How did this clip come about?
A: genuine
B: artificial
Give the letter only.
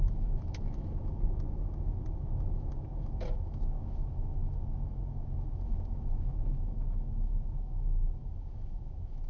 B